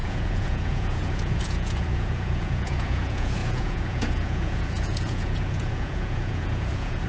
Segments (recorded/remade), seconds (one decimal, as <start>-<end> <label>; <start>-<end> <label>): 0.0-7.1 remade